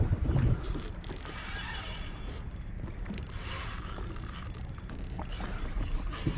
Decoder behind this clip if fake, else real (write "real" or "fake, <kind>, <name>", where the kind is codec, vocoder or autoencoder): fake, vocoder, BigVGAN v2